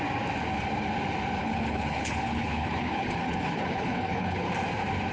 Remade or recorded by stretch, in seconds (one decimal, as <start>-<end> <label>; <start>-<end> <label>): 0.0-1.4 recorded; 1.4-4.5 remade; 4.5-5.1 recorded